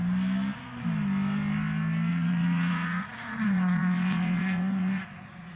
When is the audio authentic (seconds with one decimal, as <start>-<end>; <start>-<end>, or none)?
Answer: 0.0-2.1